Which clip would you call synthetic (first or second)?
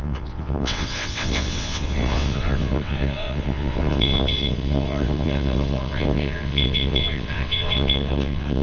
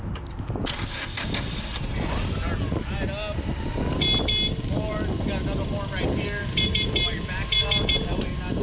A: first